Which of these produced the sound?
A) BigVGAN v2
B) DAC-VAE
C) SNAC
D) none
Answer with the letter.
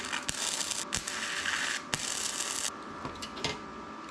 D